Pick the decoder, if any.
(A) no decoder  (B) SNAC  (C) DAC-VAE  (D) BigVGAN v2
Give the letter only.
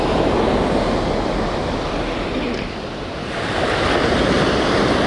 A